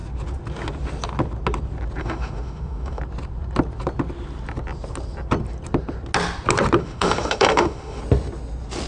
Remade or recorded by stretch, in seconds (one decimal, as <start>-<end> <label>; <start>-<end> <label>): 0.0-2.0 recorded; 2.0-3.0 remade; 3.0-6.8 recorded; 6.8-8.0 remade; 8.0-8.9 recorded